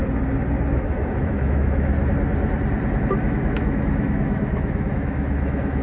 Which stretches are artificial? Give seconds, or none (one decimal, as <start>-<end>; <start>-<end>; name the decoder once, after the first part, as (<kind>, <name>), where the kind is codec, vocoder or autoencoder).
0.7-1.9 (autoencoder, DAC-VAE); 3.0-5.8